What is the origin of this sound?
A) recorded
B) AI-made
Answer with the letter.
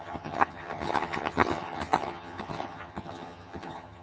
B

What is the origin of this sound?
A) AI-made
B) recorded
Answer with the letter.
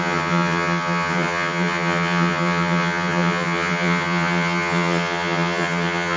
A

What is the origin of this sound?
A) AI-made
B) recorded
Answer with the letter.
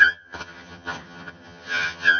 A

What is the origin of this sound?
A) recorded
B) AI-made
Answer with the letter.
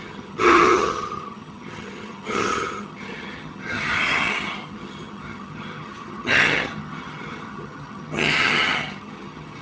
B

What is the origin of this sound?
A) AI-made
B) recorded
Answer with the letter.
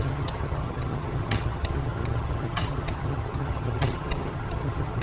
A